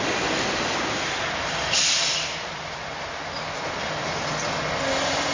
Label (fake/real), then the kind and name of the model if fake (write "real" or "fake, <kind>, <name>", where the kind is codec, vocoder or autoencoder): real